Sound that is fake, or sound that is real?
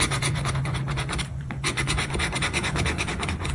fake